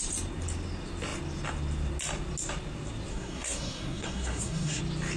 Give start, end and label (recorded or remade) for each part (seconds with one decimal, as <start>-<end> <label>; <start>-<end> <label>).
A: 0.0-3.1 recorded; 3.1-4.8 remade; 4.8-5.2 recorded